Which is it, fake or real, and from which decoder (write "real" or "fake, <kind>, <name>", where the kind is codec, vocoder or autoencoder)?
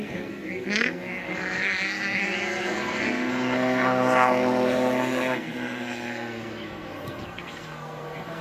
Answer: fake, codec, SNAC